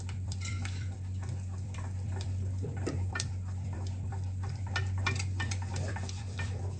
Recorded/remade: remade